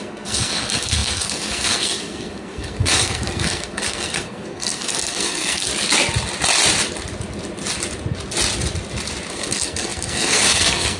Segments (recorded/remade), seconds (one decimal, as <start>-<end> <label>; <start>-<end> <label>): 0.0-5.7 remade; 5.7-9.3 recorded; 9.3-11.0 remade